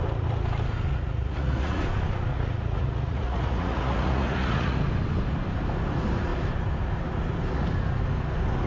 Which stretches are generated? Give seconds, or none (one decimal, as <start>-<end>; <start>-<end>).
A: 0.9-1.8; 2.3-4.8